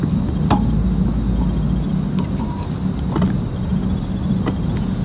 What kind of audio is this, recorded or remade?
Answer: recorded